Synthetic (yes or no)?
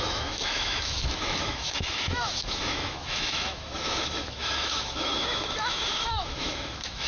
yes